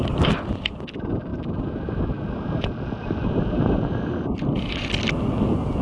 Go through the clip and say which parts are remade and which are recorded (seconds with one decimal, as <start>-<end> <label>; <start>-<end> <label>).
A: 0.0-5.8 recorded